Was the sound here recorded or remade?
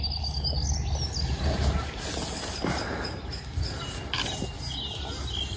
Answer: recorded